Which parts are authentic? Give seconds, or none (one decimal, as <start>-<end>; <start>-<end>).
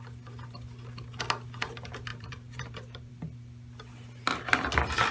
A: 0.0-2.1; 3.1-5.1